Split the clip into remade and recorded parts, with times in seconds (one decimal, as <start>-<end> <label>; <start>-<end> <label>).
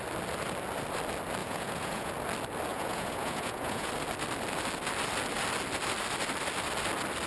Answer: 0.0-1.4 recorded; 1.4-2.1 remade; 2.1-2.7 recorded; 2.7-3.9 remade; 3.9-7.3 recorded